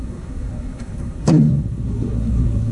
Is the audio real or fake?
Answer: fake